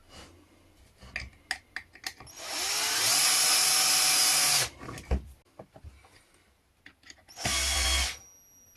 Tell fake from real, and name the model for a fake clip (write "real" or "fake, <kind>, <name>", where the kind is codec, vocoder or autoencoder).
real